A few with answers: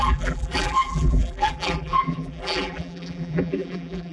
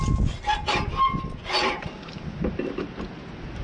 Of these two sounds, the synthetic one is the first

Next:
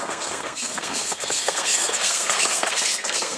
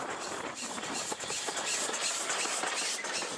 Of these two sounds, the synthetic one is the first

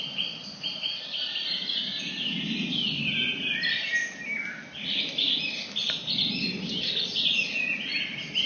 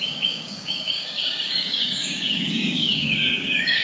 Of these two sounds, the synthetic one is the second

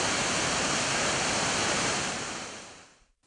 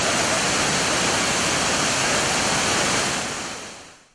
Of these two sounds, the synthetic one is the first